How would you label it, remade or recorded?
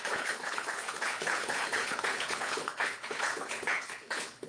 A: remade